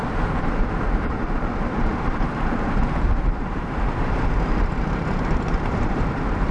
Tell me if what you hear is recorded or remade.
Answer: remade